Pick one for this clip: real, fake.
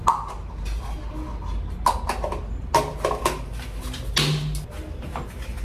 real